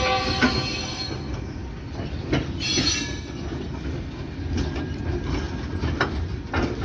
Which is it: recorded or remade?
recorded